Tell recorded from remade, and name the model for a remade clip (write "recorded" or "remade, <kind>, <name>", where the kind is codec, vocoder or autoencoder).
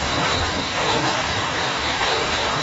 remade, codec, DAC